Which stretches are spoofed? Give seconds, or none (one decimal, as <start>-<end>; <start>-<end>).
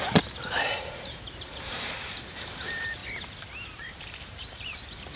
0.0-3.0; 3.8-5.2